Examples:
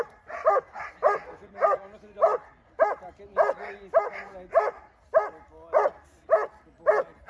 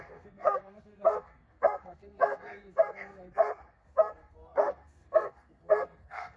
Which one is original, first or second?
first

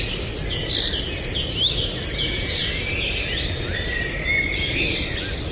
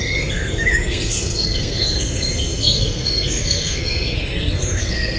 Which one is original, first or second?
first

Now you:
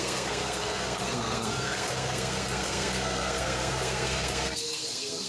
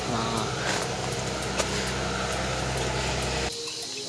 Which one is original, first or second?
second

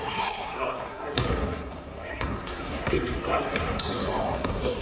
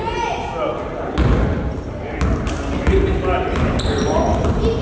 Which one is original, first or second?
second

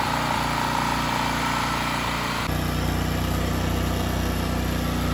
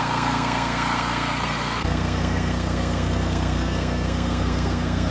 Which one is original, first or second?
first